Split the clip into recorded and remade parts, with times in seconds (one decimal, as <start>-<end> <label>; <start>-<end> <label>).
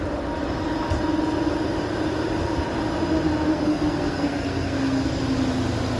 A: 0.0-3.5 recorded; 3.5-5.2 remade; 5.2-6.0 recorded